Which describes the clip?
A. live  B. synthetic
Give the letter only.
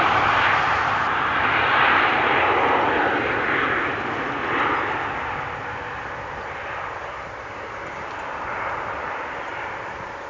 A